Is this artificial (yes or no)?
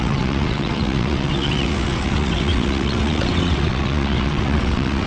yes